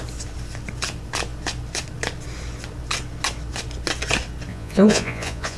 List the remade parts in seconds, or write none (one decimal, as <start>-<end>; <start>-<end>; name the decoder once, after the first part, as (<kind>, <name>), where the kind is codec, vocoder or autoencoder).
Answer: 4.5-5.6 (vocoder, Vocos)